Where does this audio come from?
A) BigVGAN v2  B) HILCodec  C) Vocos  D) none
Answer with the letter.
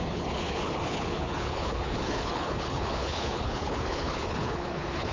B